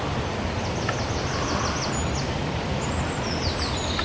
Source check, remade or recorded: recorded